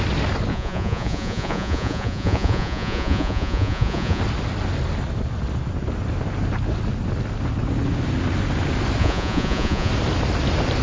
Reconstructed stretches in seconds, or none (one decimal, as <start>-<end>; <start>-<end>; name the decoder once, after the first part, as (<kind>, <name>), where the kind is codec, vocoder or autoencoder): 0.5-4.2 (vocoder, Vocos); 9.0-9.9